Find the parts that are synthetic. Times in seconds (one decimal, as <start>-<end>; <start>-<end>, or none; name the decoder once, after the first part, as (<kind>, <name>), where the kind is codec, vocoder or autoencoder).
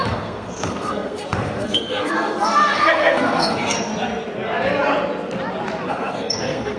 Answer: 0.0-3.9 (codec, SNAC); 5.9-6.8